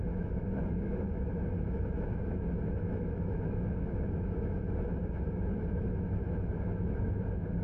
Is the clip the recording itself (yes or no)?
no